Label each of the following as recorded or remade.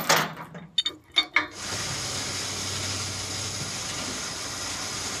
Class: recorded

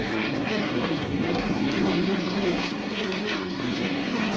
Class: remade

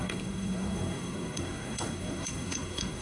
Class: remade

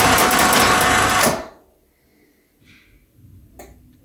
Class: recorded